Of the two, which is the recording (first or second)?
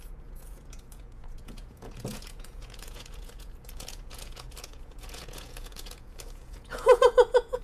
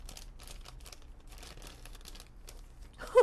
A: second